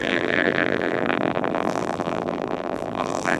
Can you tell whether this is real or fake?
fake